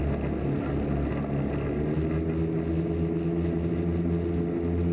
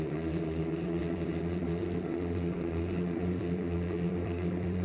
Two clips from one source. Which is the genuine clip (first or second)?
first